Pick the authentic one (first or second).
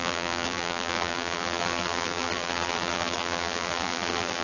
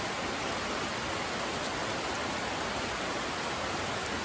second